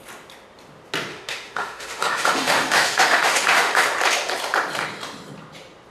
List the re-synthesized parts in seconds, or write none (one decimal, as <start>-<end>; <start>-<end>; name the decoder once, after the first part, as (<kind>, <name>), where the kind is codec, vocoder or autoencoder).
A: 1.1-3.8 (autoencoder, DAC-VAE)